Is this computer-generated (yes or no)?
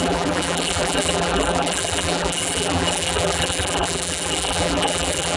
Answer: yes